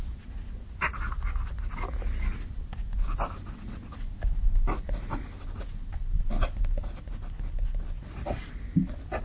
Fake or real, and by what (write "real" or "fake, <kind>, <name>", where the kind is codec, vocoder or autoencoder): real